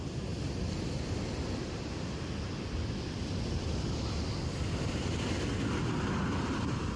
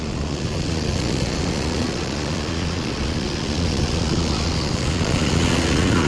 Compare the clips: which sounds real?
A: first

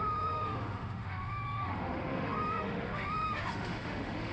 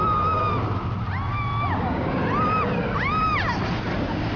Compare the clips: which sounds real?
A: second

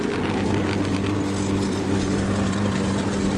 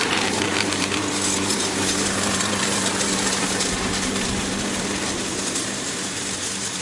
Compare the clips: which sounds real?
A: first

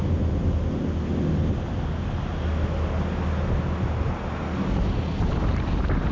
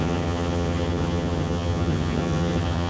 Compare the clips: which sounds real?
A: first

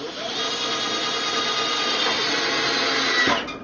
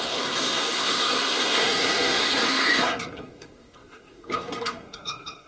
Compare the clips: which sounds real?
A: first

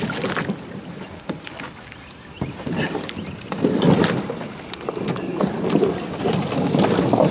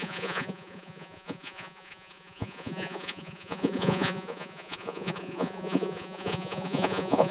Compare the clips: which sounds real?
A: first